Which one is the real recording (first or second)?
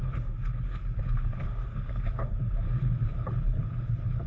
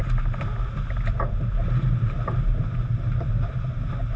second